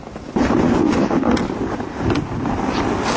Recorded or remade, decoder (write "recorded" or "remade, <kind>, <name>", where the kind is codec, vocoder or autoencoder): recorded